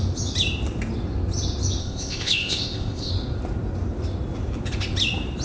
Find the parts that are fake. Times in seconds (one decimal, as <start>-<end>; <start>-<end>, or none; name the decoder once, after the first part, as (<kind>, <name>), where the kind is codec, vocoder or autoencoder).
1.8-3.1 (codec, ZipCodec)